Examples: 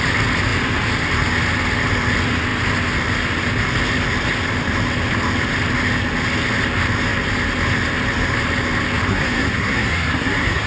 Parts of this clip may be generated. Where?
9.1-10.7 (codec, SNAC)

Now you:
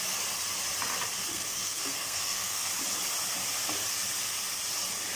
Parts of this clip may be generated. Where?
1.3-2.7 (codec, SNAC)

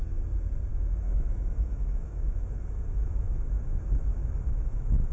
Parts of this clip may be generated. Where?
0.7-3.8 (autoencoder, DAC-VAE); 4.2-5.1

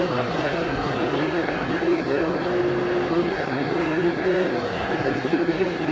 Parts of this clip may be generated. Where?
0.0-2.5 (codec, SNAC); 3.1-5.9

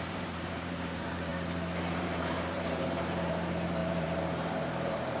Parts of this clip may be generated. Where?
0.0-1.3 (vocoder, BigVGAN v2); 1.9-5.2